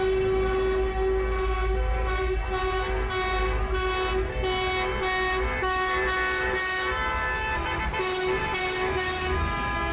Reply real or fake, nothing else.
real